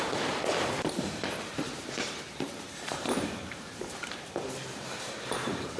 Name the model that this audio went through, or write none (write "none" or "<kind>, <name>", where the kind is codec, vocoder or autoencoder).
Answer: vocoder, BigVGAN v2